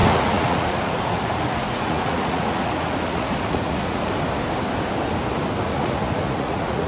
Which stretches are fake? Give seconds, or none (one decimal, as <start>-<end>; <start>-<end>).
0.0-4.1; 5.7-6.9